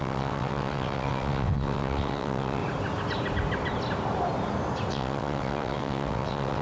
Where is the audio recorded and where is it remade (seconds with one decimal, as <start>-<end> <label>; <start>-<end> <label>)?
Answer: 0.0-2.6 remade; 2.6-4.9 recorded; 4.9-6.6 remade